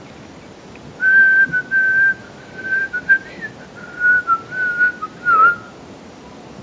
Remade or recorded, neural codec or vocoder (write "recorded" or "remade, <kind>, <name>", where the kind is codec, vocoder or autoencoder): recorded